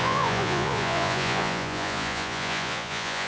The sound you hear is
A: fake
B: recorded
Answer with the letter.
A